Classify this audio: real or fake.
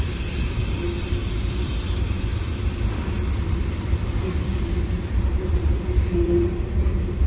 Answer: fake